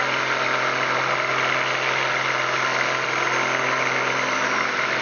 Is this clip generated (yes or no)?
no